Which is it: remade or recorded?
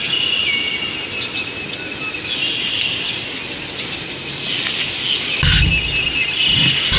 recorded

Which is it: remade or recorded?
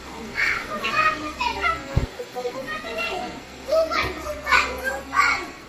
remade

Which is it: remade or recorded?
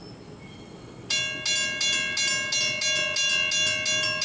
recorded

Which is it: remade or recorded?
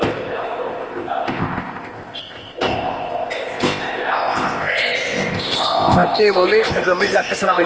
remade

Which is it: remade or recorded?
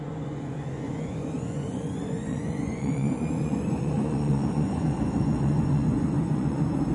remade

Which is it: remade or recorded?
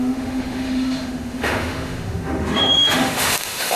remade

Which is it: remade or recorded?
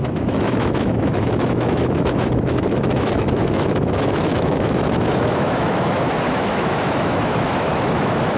remade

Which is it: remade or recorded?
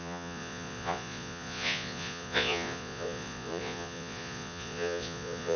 remade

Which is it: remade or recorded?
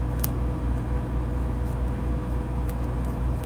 remade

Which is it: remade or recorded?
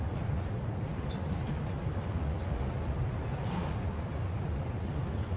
recorded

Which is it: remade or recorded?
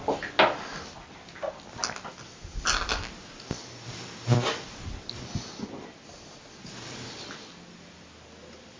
recorded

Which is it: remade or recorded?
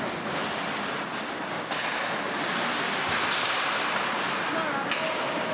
recorded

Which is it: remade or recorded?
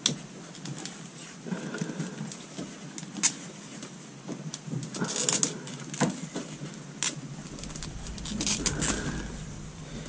recorded